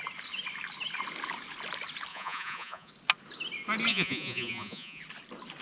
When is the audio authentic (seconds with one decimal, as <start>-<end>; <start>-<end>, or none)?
0.0-2.1; 2.9-3.9; 5.0-5.6